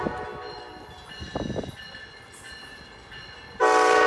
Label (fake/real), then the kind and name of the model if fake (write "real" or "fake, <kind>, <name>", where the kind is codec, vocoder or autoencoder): real